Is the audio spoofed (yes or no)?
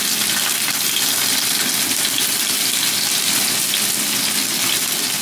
no